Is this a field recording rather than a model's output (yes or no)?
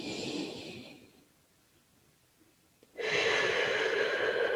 yes